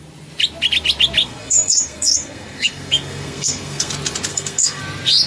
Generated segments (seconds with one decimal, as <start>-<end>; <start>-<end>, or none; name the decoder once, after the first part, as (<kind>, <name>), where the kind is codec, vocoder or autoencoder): 1.2-3.9 (codec, SNAC); 4.3-4.8